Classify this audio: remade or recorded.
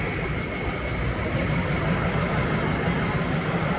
recorded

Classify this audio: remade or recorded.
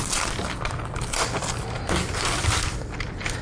recorded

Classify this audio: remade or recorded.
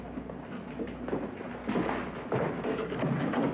recorded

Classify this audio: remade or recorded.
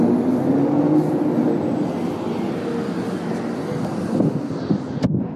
recorded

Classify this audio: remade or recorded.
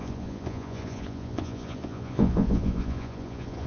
remade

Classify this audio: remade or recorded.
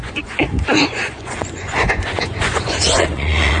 remade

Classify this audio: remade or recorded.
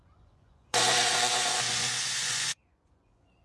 remade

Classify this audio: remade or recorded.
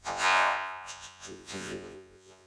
remade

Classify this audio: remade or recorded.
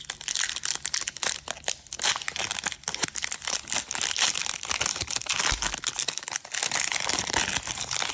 recorded